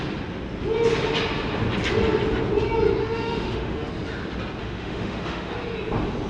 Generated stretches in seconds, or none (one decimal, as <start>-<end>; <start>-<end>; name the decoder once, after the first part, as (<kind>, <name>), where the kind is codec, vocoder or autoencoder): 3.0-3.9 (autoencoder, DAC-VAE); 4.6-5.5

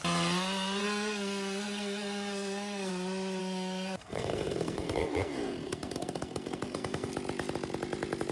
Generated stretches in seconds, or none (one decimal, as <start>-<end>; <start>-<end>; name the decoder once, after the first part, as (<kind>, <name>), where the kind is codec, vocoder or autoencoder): 0.8-2.9 (codec, SNAC); 3.4-7.1

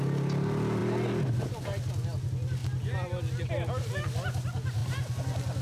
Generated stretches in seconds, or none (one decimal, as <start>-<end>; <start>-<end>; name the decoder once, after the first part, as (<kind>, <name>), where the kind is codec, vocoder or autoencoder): none